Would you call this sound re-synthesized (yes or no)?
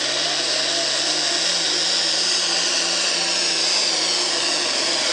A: no